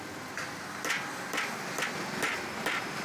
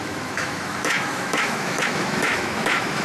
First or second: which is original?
first